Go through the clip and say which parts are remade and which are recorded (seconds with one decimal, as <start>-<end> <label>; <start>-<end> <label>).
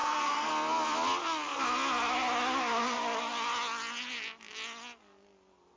0.0-0.5 remade; 0.5-5.8 recorded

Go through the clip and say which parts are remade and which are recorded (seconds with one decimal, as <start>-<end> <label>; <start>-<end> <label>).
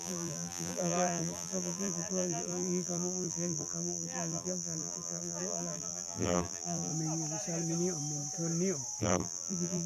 0.0-6.9 remade; 6.9-9.0 recorded; 9.0-9.9 remade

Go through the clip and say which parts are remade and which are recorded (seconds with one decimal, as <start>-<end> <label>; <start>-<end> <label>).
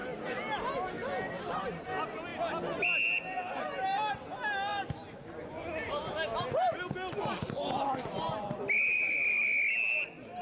0.0-10.4 recorded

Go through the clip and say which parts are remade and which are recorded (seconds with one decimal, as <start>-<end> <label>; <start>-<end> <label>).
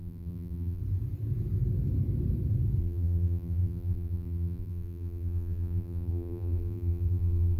0.0-0.8 remade; 0.8-2.8 recorded; 2.8-7.6 remade